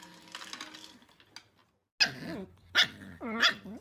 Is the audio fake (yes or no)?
no